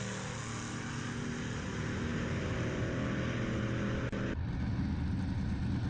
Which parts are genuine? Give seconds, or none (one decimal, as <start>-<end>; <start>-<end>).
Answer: 0.0-2.1; 3.4-5.9